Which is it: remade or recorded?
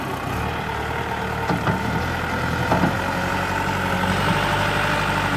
recorded